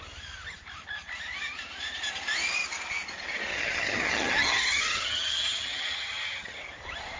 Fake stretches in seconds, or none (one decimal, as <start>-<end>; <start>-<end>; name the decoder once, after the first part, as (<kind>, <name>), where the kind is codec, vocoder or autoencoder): 3.5-6.6 (vocoder, HiFi-GAN)